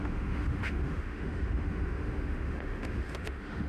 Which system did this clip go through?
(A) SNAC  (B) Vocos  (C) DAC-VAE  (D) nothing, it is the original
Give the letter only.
C